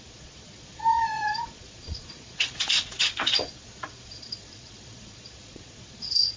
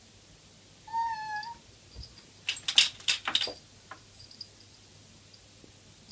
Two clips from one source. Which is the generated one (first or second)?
first